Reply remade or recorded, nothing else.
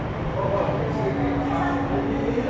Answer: recorded